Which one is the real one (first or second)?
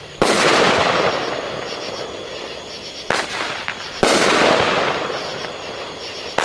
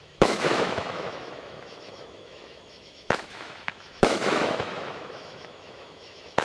first